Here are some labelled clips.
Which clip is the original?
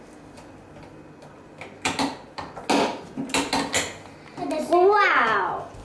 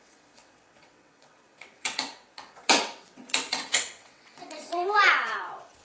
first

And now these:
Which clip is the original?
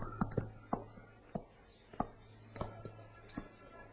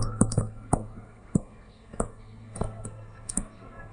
first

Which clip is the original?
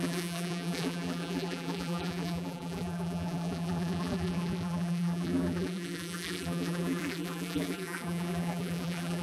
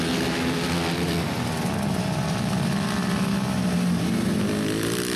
second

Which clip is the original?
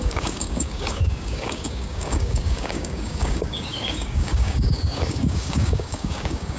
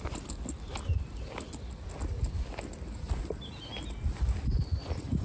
second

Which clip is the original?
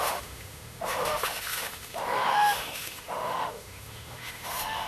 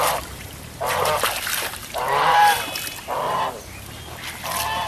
second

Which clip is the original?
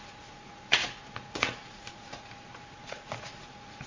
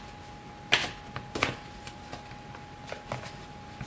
second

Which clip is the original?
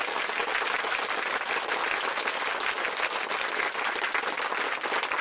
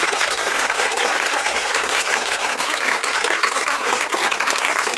first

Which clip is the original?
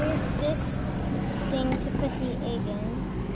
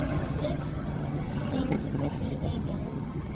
first